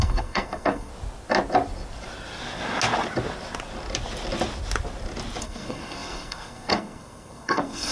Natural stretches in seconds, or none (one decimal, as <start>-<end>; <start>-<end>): 0.9-5.4